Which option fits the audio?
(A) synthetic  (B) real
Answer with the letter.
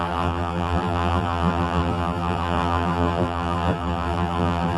A